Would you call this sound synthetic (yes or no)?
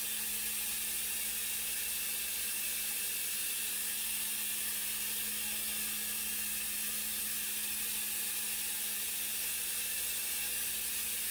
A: no